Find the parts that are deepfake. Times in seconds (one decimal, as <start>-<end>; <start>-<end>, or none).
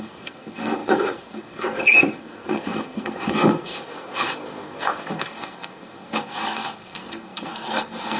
0.0-8.2